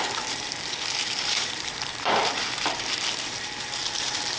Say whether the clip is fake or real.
fake